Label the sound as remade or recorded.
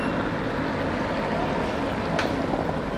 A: recorded